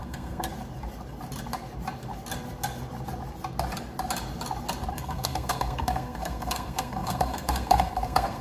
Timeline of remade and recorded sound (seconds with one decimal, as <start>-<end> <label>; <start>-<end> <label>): 0.0-0.5 remade; 0.5-4.9 recorded; 4.9-8.4 remade